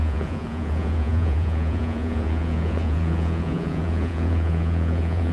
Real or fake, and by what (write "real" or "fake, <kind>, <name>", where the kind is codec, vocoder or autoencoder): fake, vocoder, Vocos